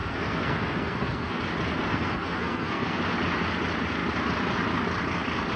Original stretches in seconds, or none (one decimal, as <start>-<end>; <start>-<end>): 1.4-1.9; 3.0-5.6